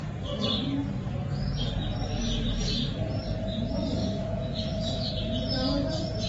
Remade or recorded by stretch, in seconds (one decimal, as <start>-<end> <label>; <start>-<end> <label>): 0.0-4.0 recorded; 4.0-5.1 remade; 5.1-6.3 recorded